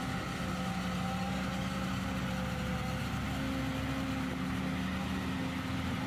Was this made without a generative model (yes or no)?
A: yes